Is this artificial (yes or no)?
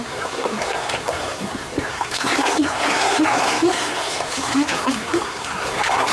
yes